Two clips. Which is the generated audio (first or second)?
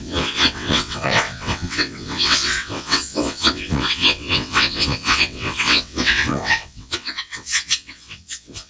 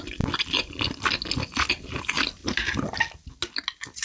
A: first